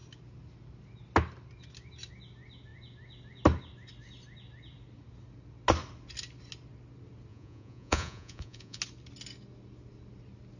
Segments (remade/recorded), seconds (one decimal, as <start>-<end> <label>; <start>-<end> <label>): 0.0-7.3 recorded; 7.3-8.8 remade; 8.8-10.6 recorded